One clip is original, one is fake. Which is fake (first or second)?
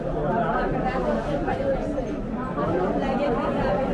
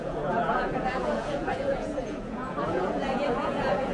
second